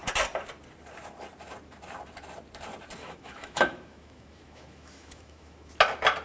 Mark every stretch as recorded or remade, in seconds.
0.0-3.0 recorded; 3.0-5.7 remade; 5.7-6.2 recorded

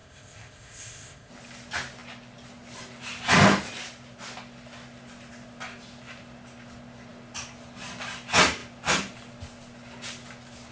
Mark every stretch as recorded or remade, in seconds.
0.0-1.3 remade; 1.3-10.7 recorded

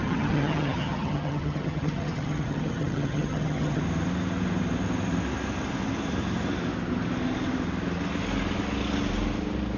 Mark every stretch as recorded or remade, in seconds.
0.0-3.8 remade; 3.8-9.8 recorded